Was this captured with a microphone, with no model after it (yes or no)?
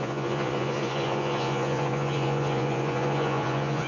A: no